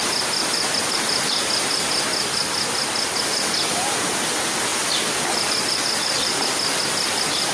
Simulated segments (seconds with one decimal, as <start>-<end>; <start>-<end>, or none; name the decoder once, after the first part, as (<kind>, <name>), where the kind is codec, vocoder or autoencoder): none